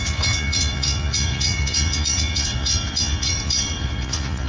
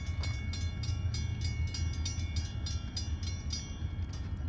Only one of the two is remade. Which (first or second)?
first